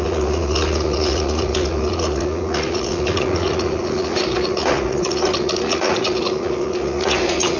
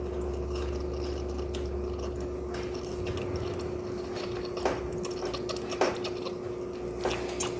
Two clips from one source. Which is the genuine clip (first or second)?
second